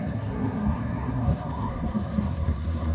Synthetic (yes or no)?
yes